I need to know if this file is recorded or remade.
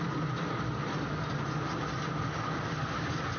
recorded